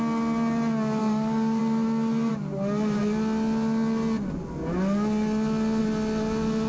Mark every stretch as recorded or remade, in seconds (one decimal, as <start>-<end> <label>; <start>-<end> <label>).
0.0-1.0 recorded; 1.0-1.6 remade; 1.6-6.7 recorded